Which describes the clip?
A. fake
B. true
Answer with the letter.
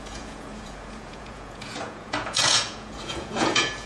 A